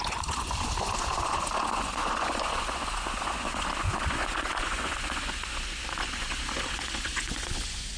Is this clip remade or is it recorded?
remade